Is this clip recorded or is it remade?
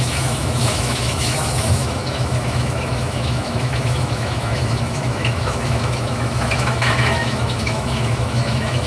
remade